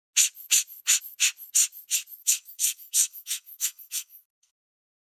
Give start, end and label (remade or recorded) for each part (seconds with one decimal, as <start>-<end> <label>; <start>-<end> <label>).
0.0-2.2 recorded; 2.2-5.0 remade